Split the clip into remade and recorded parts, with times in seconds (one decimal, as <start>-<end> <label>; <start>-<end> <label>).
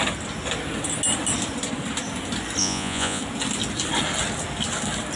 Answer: 0.0-2.6 recorded; 2.6-3.2 remade; 3.2-5.2 recorded